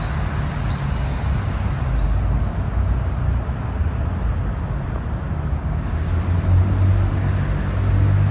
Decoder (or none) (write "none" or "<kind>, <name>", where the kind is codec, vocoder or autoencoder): none